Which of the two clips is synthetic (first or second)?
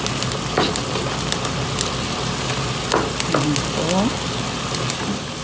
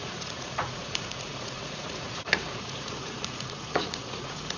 second